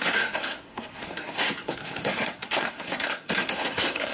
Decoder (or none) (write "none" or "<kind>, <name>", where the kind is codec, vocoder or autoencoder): codec, SNAC